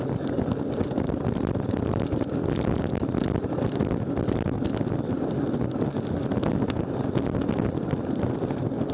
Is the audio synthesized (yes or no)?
no